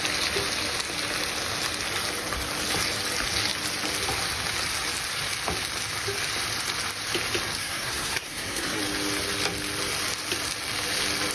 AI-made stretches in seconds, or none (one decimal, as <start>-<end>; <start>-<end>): 7.6-8.8